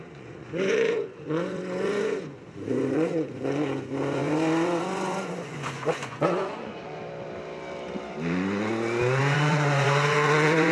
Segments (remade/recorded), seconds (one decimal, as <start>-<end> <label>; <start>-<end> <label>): 0.0-7.0 remade; 7.0-9.2 recorded; 9.2-10.7 remade